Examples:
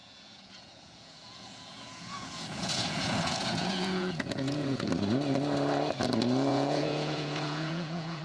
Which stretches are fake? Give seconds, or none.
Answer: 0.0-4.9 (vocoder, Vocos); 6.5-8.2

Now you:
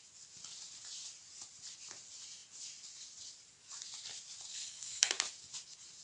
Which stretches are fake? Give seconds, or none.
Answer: 4.5-5.1 (codec, SNAC)

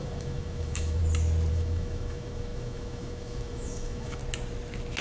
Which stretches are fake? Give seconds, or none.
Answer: 0.0-1.0 (autoencoder, DAC-VAE); 1.5-4.2

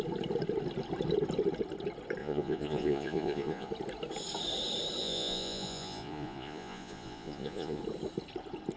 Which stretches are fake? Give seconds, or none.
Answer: 2.2-3.7 (vocoder, Vocos); 5.0-7.8

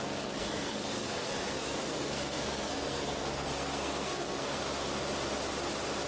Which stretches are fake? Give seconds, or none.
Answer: 0.0-4.6 (codec, SNAC)

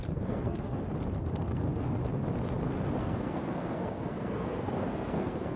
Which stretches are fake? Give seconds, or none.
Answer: 0.0-0.8 (codec, SNAC); 1.3-2.0; 3.0-5.6